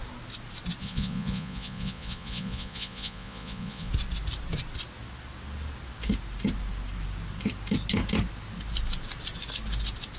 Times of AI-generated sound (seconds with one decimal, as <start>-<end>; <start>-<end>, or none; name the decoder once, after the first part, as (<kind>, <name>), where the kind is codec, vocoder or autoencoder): 0.8-3.9 (vocoder, Vocos)